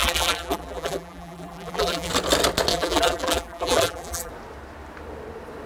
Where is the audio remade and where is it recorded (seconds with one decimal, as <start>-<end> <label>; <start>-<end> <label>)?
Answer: 0.0-2.1 remade; 2.1-2.7 recorded; 2.7-4.3 remade; 4.3-5.7 recorded